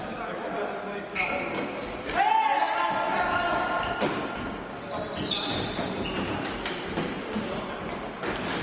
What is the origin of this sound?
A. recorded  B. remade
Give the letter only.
A